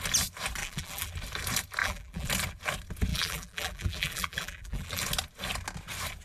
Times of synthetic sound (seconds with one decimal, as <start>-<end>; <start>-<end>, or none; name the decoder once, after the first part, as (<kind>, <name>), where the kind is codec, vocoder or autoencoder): 0.6-1.1 (vocoder, BigVGAN v2); 1.8-2.3; 3.1-5.0

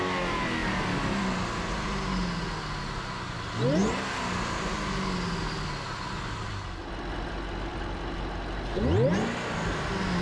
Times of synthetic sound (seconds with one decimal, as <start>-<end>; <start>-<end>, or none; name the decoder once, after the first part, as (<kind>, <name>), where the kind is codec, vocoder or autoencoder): none

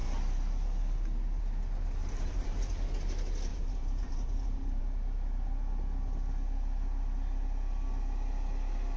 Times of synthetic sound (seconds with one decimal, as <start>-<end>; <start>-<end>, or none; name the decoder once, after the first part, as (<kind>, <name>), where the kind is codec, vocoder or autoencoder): 2.0-2.7 (vocoder, BigVGAN v2); 3.5-4.8

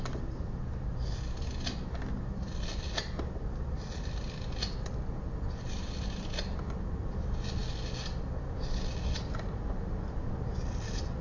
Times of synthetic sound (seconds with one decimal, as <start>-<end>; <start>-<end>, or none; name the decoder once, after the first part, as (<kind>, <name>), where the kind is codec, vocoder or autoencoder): none

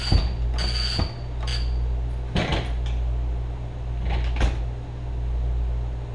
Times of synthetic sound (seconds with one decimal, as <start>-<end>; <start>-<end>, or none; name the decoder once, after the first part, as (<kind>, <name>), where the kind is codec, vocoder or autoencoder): none